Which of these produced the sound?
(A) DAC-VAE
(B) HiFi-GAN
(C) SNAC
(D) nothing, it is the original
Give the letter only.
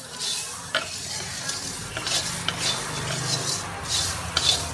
D